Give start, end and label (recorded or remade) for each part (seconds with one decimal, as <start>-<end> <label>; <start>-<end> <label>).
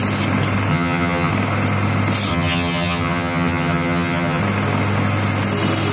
0.0-0.7 recorded; 0.7-1.3 remade; 1.3-2.3 recorded; 2.3-4.4 remade; 4.4-5.9 recorded